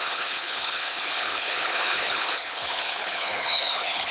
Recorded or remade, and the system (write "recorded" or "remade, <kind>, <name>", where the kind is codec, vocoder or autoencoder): remade, codec, HILCodec